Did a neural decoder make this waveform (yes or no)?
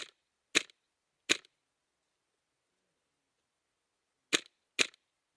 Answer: no